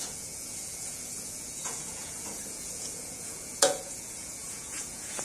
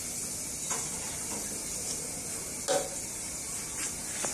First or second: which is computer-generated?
first